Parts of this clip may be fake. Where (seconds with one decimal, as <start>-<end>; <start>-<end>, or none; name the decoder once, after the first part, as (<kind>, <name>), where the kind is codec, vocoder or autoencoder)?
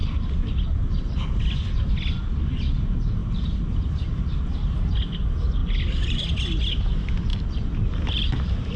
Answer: none